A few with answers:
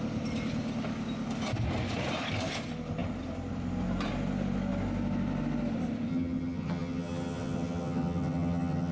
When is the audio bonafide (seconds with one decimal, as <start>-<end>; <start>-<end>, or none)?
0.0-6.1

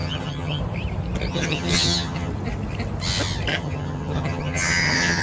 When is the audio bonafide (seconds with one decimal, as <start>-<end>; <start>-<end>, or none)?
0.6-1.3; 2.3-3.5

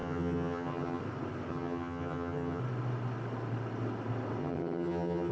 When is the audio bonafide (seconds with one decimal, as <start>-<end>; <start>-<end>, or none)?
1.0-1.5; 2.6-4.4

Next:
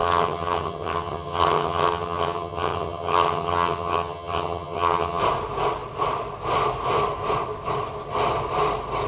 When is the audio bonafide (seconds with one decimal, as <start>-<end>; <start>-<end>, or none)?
5.2-9.1